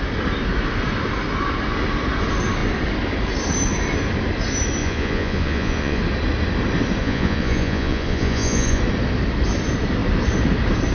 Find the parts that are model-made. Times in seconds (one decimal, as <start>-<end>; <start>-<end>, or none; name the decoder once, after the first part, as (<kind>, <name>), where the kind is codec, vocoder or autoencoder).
4.8-6.0 (vocoder, Vocos); 7.0-8.8